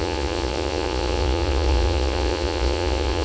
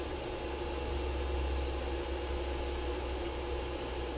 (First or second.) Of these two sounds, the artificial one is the first